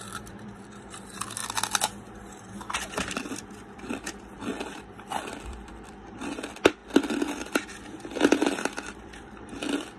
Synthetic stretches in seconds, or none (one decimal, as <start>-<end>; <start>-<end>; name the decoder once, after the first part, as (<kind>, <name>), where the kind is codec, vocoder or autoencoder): 0.0-1.4 (vocoder, BigVGAN v2); 2.2-6.8; 7.3-10.0